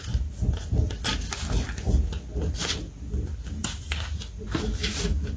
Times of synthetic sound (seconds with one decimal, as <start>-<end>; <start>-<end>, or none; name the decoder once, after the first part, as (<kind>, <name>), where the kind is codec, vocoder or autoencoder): none